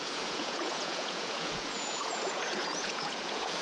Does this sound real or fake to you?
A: fake